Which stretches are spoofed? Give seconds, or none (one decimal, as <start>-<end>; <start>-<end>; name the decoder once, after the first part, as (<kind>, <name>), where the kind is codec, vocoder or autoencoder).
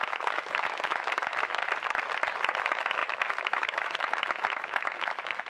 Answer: 0.0-1.6 (autoencoder, DAC-VAE); 2.6-5.5